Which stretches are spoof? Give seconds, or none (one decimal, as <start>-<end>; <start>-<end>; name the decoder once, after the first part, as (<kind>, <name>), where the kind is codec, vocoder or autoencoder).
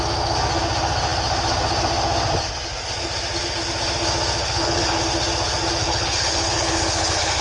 4.4-5.0 (codec, HILCodec); 5.8-7.4